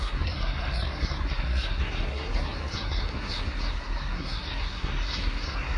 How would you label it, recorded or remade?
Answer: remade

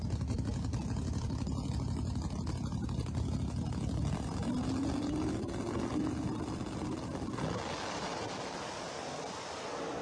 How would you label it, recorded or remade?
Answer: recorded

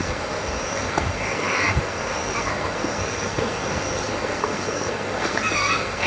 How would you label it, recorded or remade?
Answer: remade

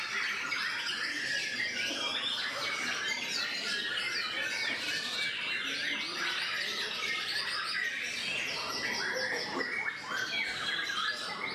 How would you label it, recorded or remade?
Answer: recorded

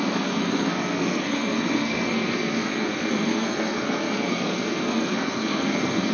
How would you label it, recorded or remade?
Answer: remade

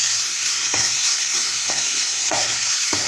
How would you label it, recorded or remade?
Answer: remade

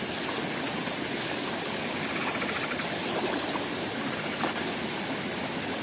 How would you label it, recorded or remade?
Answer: recorded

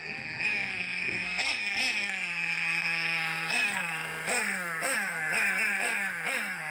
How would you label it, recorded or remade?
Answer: remade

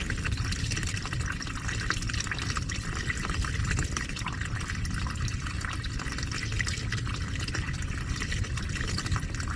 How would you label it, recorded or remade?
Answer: recorded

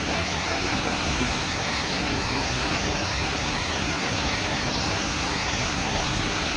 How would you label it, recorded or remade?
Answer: remade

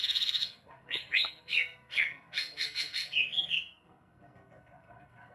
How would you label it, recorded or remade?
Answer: remade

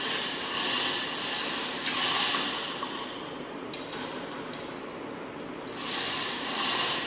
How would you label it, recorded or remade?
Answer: recorded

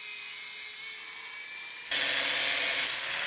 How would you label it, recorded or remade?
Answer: recorded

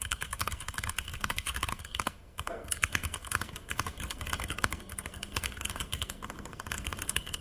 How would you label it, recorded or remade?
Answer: remade